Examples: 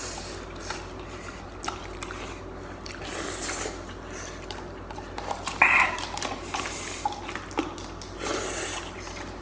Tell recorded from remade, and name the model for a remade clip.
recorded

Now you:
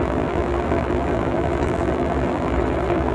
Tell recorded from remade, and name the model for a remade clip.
remade, vocoder, BigVGAN v2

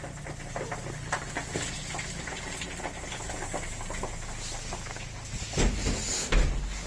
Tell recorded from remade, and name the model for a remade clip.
recorded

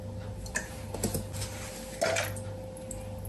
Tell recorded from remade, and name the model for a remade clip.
recorded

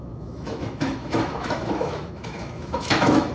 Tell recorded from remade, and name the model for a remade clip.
remade, autoencoder, DAC-VAE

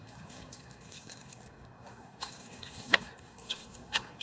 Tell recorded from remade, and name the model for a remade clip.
remade, codec, SNAC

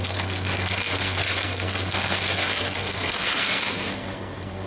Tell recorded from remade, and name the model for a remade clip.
remade, codec, SNAC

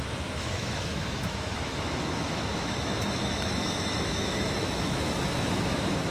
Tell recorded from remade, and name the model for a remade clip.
remade, autoencoder, DAC-VAE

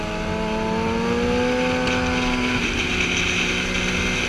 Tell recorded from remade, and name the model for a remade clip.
recorded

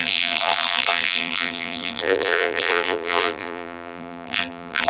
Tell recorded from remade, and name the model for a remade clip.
remade, vocoder, BigVGAN v2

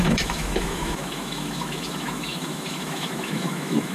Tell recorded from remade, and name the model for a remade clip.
remade, autoencoder, DAC-VAE